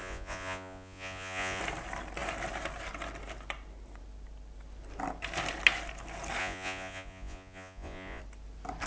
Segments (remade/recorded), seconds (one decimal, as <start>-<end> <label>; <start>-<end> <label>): 0.0-1.6 remade; 1.6-6.4 recorded; 6.4-8.2 remade; 8.2-8.9 recorded